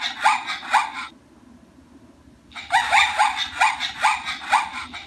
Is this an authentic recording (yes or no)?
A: yes